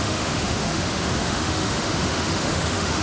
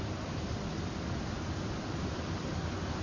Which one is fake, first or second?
first